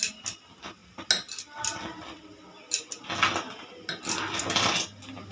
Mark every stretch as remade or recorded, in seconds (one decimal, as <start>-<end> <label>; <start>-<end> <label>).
0.0-5.3 recorded

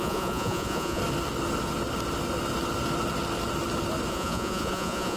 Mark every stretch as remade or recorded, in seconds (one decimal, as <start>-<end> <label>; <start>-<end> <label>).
0.0-1.0 remade; 1.0-4.1 recorded; 4.1-5.2 remade